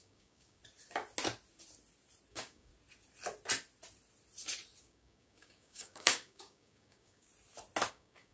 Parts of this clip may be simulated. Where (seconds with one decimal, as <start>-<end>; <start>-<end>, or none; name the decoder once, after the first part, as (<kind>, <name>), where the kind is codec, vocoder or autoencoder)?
0.0-0.6 (codec, DAC); 2.3-2.7; 4.8-7.3; 7.9-8.3